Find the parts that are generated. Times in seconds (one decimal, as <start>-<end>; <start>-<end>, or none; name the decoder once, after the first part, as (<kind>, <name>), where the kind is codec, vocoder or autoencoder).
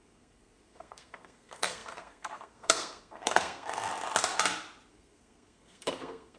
0.0-3.9 (codec, SNAC); 4.9-6.4